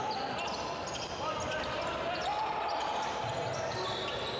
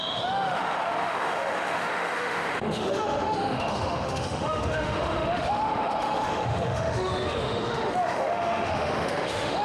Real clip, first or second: first